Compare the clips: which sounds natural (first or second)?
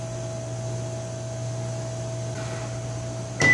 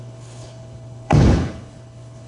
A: first